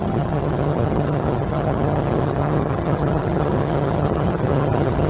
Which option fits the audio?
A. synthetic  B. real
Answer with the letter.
A